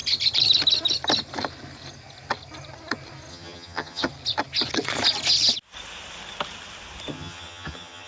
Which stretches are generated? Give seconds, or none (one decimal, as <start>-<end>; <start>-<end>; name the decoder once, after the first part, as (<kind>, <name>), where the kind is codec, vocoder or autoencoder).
3.3-4.1 (vocoder, HiFi-GAN); 7.1-8.1